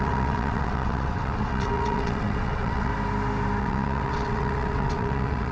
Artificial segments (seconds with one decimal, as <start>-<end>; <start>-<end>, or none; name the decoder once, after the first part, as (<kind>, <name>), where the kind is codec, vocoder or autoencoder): 0.0-2.9 (vocoder, WaveNeXt); 3.6-5.5